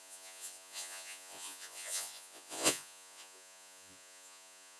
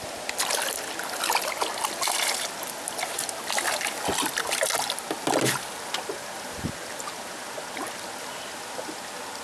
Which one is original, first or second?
second